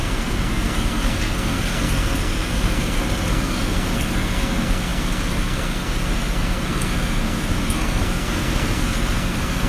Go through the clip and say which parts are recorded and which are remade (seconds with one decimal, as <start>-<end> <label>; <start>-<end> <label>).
0.0-9.7 remade